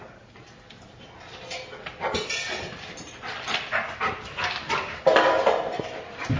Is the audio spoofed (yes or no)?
no